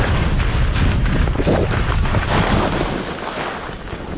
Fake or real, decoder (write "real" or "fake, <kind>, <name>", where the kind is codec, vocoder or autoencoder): real